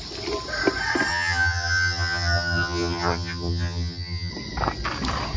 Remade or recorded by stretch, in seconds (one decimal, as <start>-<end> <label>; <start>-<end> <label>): 0.0-1.1 recorded; 1.1-4.3 remade; 4.3-5.4 recorded